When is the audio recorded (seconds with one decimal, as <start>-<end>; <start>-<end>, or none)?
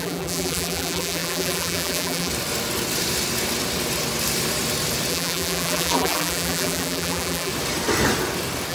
2.3-5.1; 7.5-8.7